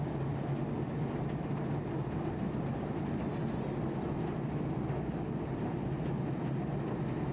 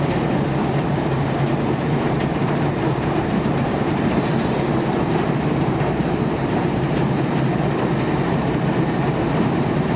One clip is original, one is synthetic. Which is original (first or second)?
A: first